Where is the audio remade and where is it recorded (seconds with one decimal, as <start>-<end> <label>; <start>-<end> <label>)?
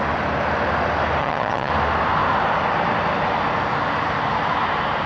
0.0-1.2 recorded; 1.2-1.7 remade; 1.7-5.1 recorded